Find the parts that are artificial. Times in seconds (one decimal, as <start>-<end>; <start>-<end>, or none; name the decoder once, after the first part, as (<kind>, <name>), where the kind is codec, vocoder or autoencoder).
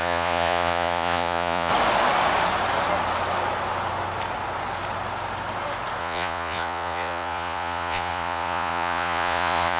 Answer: 0.0-1.7 (vocoder, Vocos); 6.0-9.8